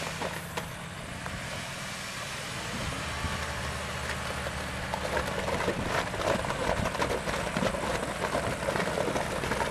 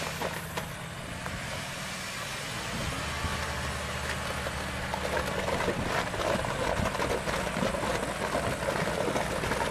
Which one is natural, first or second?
second